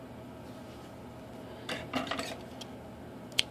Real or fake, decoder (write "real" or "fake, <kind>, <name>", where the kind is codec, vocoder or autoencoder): real